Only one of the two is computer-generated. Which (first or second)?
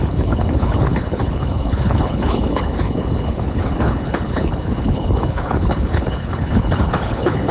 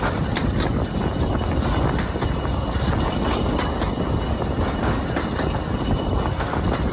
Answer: first